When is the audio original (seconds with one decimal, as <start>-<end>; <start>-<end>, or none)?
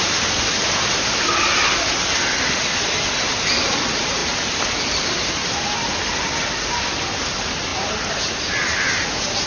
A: 0.0-9.5